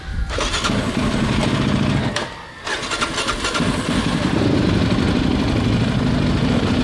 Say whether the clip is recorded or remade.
recorded